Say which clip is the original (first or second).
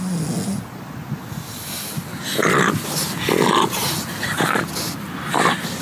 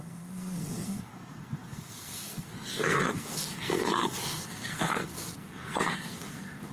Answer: first